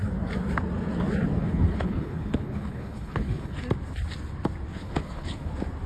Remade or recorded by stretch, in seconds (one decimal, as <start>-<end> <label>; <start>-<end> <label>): 0.0-1.4 recorded; 1.4-3.6 remade; 3.6-4.7 recorded; 4.7-5.5 remade; 5.5-5.9 recorded